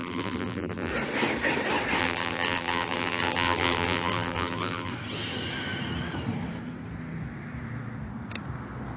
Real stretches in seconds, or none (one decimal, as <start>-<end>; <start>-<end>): 0.9-2.0; 4.9-9.0